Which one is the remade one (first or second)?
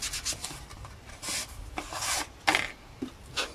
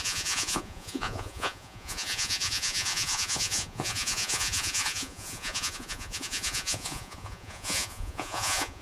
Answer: second